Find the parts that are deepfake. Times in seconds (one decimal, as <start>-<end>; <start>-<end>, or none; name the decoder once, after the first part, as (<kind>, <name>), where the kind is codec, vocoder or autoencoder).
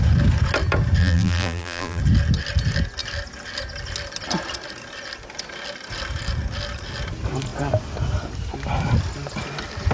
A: 1.0-2.0 (vocoder, BigVGAN v2)